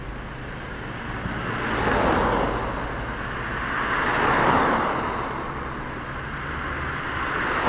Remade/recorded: recorded